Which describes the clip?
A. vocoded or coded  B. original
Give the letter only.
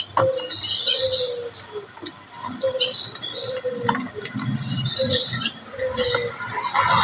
B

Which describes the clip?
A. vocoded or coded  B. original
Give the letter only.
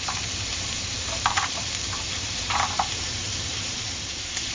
A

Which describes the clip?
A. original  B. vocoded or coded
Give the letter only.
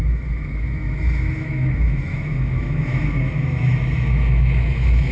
B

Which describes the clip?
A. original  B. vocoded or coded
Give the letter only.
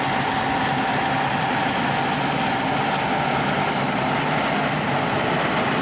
A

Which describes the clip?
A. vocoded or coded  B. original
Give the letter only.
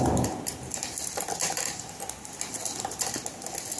B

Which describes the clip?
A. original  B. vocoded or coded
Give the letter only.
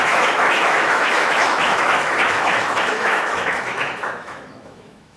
B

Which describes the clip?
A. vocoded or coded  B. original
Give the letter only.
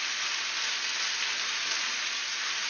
B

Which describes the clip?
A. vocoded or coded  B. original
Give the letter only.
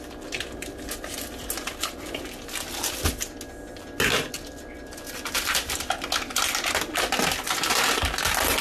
B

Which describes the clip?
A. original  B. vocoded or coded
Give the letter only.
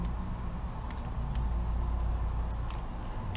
A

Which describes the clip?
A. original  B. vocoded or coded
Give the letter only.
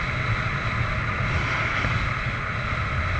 A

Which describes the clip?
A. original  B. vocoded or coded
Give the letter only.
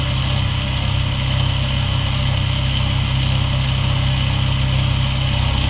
A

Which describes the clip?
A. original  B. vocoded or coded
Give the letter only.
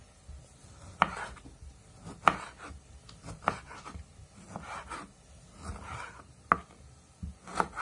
A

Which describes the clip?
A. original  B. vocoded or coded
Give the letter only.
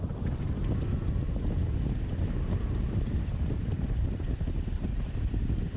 A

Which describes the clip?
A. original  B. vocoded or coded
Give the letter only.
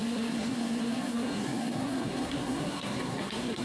B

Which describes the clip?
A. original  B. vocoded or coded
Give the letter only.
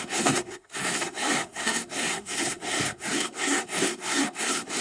B